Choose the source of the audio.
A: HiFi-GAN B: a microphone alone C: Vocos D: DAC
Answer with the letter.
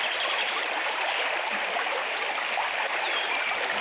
B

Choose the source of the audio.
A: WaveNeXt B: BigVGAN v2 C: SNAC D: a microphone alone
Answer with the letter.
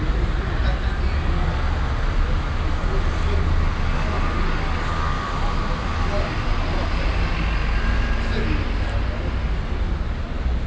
D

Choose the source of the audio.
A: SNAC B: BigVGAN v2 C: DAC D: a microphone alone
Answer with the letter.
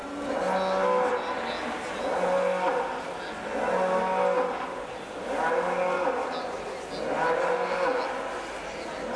D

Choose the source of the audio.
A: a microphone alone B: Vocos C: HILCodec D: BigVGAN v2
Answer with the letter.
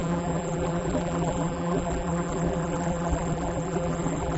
D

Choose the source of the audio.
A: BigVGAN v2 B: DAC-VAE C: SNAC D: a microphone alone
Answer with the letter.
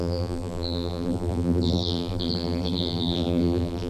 A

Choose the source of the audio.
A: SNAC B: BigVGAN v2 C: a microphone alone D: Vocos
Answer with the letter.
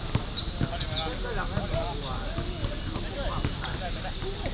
C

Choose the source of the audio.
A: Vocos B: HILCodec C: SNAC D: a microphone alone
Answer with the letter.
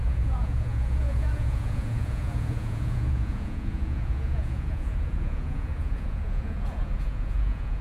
A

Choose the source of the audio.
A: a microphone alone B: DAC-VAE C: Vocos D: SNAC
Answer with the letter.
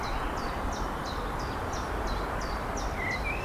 A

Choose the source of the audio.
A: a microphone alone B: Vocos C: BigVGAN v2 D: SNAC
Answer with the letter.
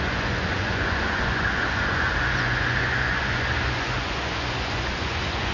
B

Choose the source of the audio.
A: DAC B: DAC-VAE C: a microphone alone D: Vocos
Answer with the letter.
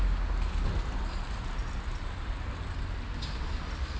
C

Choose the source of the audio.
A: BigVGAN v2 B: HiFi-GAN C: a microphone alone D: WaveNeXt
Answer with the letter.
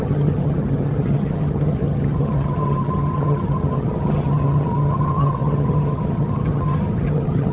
B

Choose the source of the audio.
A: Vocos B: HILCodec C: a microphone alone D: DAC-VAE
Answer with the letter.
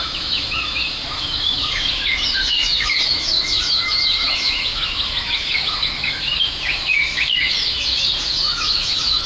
D